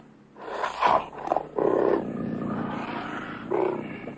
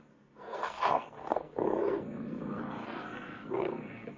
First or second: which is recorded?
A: first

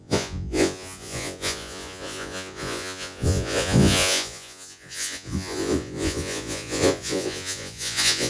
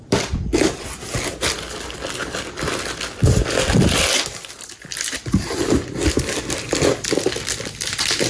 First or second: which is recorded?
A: second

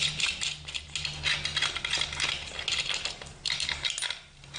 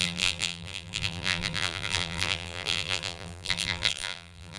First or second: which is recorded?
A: first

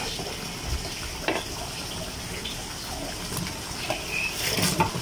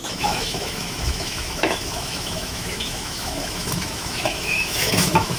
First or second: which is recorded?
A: first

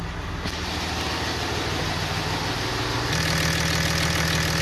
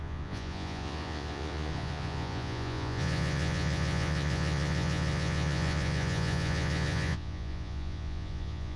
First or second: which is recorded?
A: first